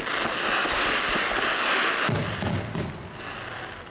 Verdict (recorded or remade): recorded